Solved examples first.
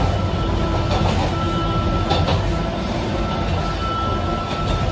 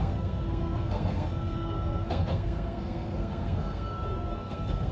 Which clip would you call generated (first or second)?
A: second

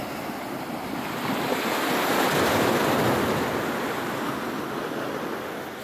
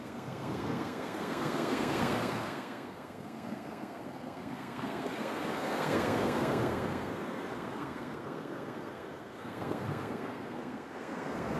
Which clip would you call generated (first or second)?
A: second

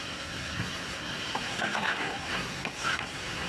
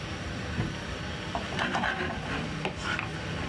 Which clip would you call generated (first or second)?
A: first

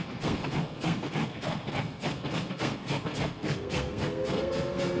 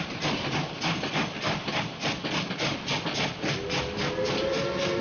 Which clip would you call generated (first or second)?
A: first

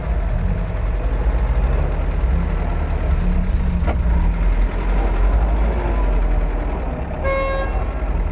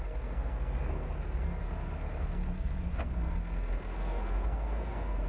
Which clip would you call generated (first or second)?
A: second